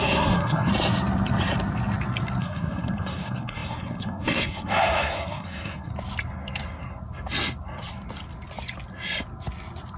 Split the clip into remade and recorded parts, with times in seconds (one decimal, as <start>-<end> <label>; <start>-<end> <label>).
0.0-0.7 remade; 0.7-2.4 recorded; 2.4-5.9 remade; 5.9-10.0 recorded